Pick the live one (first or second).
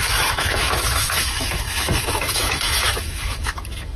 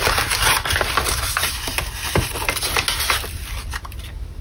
second